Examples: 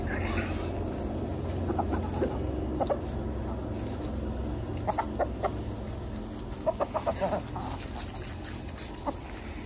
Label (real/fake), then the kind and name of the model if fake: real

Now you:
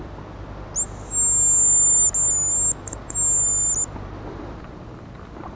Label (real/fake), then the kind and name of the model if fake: real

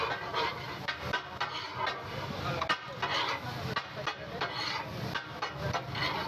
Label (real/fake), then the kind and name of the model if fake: real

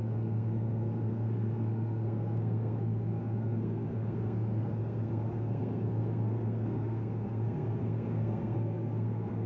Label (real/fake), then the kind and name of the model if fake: fake, codec, SNAC